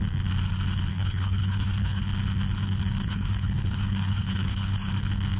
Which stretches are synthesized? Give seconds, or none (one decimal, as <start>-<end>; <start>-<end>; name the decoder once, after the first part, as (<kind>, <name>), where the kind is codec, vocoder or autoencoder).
0.9-2.0 (codec, HILCodec); 3.0-4.9

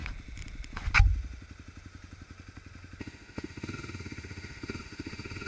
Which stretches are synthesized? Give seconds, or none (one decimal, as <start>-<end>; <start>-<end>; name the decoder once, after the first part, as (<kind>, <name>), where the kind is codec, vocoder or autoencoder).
3.0-5.5 (autoencoder, DAC-VAE)

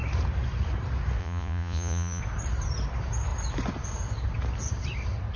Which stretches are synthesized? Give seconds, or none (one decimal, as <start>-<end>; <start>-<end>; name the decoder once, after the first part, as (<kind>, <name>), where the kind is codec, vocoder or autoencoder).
1.2-2.2 (vocoder, Vocos)

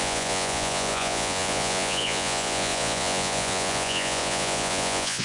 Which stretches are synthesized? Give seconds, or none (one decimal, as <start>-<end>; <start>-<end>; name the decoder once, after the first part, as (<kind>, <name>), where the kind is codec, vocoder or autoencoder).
0.0-5.2 (vocoder, Vocos)